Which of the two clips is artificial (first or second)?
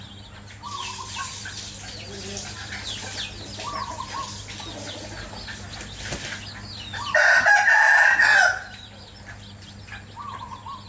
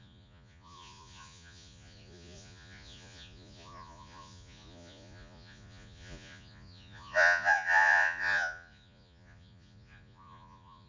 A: second